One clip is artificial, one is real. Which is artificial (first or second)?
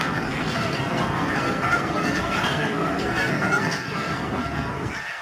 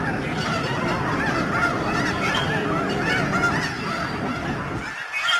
first